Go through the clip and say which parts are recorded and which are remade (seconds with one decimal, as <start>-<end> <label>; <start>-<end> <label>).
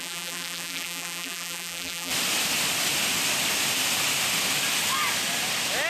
0.0-2.1 remade; 2.1-5.9 recorded